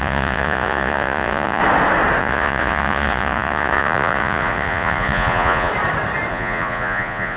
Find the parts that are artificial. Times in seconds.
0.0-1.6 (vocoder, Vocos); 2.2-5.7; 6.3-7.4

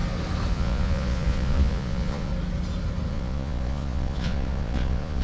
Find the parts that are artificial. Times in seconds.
0.5-2.3 (vocoder, Vocos); 3.1-5.2